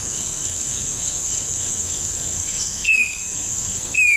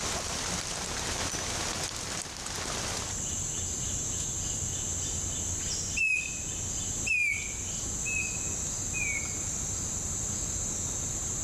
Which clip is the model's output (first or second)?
first